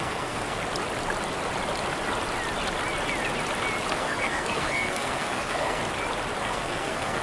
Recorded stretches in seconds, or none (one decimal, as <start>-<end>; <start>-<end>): 0.6-3.9; 5.8-6.4